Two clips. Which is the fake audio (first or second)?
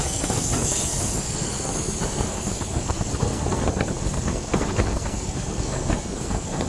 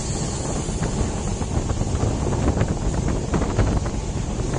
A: first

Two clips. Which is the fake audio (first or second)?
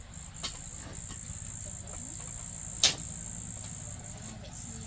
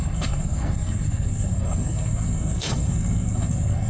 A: second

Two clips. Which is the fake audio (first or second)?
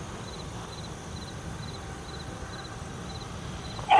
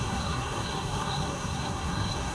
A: second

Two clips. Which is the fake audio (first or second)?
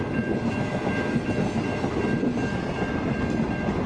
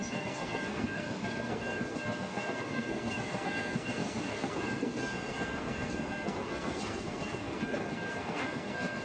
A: second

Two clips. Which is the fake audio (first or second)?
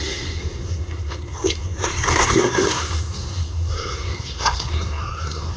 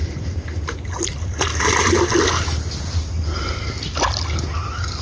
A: first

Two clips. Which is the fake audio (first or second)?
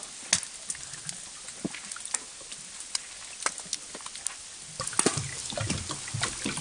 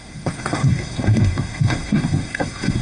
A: second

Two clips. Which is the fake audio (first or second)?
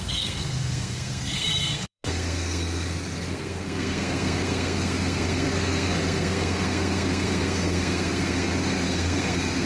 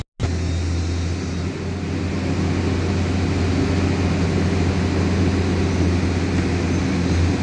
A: first